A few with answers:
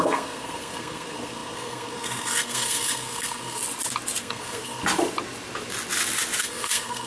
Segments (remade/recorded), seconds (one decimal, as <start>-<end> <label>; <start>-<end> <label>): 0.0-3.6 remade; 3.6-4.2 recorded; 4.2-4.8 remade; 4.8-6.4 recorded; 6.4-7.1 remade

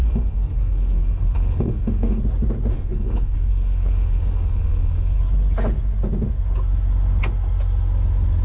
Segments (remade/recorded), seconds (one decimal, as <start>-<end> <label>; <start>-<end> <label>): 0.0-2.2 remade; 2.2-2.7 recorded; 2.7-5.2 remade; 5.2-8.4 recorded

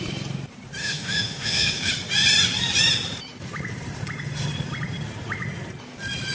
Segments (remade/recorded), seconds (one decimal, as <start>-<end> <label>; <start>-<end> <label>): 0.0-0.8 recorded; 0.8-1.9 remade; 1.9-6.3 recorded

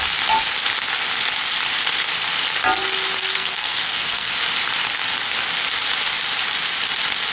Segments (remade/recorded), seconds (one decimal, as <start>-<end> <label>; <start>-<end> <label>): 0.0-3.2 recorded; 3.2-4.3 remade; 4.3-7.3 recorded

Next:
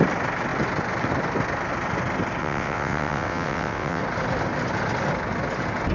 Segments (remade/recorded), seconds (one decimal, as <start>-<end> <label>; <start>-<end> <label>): 0.0-2.4 recorded; 2.4-4.0 remade; 4.0-5.9 recorded